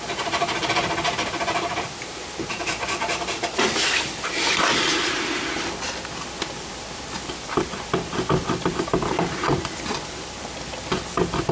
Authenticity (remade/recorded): remade